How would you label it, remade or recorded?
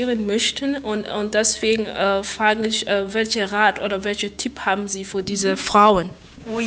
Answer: remade